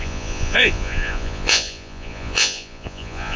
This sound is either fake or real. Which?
fake